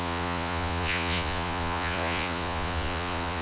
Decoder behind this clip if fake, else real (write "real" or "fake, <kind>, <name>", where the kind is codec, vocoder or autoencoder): fake, vocoder, Vocos